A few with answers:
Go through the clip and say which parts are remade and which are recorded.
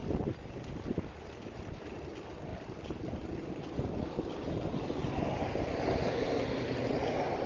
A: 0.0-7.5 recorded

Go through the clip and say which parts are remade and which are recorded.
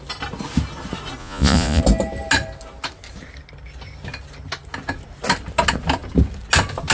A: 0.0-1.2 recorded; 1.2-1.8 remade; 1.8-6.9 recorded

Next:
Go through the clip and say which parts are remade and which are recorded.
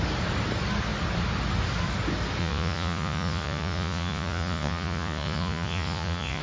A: 0.0-2.4 recorded; 2.4-6.4 remade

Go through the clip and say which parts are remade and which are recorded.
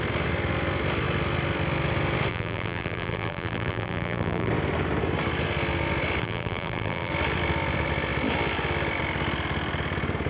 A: 0.0-2.3 recorded; 2.3-4.5 remade; 4.5-6.2 recorded; 6.2-7.1 remade; 7.1-10.3 recorded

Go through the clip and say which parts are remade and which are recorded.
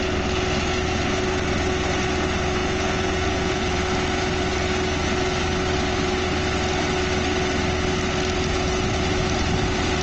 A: 0.0-2.6 recorded; 2.6-3.6 remade; 3.6-10.0 recorded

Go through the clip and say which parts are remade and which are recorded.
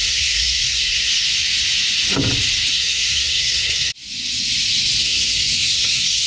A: 0.0-1.1 remade; 1.1-2.7 recorded; 2.7-3.9 remade; 3.9-5.0 recorded; 5.0-6.3 remade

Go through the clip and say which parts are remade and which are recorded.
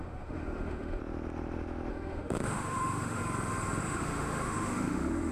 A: 0.0-1.0 remade; 1.0-1.9 recorded; 1.9-3.2 remade; 3.2-3.8 recorded; 3.8-5.3 remade